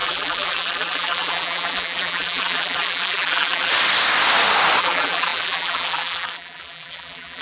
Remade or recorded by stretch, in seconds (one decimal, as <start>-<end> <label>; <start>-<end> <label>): 0.0-3.7 remade; 3.7-4.8 recorded; 4.8-7.4 remade